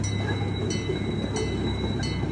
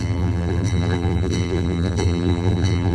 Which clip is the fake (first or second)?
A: second